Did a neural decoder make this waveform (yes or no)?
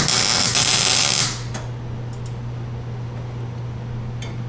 no